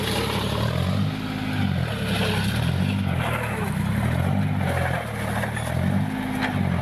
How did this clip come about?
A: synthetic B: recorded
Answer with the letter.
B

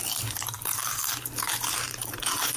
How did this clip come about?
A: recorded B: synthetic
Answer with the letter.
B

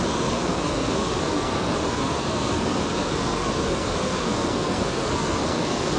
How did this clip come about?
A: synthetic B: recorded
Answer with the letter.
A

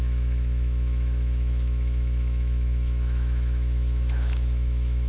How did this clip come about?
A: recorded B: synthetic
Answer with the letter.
B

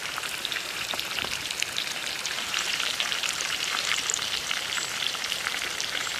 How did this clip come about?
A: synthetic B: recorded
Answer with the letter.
A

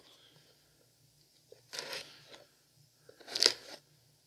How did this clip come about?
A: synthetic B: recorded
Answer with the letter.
B